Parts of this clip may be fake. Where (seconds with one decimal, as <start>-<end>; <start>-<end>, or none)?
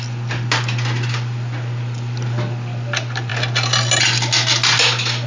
none